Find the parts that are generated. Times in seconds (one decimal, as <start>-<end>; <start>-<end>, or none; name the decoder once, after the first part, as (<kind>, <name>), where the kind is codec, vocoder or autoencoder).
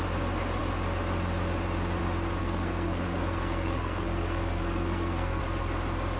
2.4-5.4 (codec, SNAC)